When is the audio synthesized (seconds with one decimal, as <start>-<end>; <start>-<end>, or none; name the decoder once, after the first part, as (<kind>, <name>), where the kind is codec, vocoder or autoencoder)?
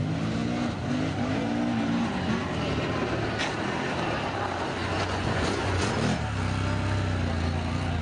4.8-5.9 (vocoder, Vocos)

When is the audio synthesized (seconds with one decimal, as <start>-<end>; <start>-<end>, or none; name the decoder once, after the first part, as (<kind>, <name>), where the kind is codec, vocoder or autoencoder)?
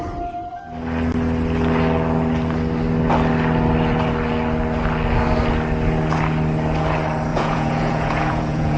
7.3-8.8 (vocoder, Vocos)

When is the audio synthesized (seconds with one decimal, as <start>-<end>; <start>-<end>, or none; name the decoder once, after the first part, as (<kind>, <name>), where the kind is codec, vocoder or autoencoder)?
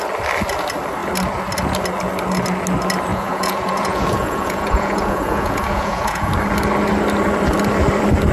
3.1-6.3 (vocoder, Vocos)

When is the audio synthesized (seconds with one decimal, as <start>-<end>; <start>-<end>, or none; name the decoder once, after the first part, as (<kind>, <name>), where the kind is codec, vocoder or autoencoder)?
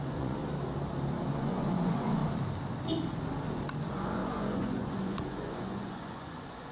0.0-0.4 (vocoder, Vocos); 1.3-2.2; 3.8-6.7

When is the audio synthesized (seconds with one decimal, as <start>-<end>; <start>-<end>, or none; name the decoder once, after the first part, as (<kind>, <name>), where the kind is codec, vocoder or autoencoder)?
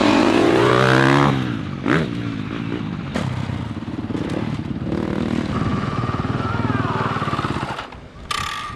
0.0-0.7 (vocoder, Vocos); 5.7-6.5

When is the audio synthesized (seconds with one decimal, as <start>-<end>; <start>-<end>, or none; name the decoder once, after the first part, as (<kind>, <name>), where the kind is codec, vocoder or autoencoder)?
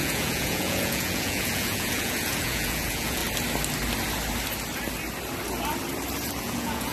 0.0-3.2 (vocoder, Vocos); 6.4-6.9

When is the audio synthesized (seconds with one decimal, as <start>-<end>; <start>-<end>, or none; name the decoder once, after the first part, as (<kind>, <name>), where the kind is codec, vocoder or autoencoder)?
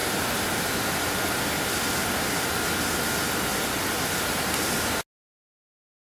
none